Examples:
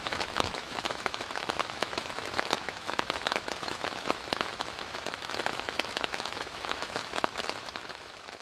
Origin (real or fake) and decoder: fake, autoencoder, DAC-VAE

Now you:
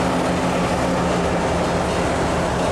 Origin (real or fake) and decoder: real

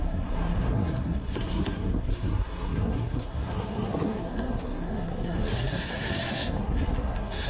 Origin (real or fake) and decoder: fake, codec, SNAC